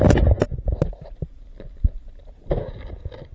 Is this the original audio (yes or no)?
yes